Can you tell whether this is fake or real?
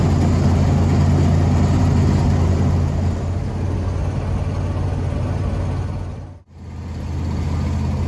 real